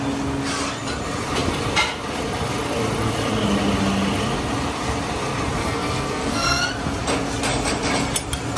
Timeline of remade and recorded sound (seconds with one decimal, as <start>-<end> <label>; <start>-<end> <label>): 0.0-5.6 recorded; 5.6-6.7 remade; 6.7-8.6 recorded